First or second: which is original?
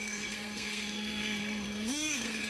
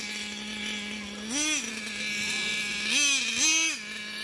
second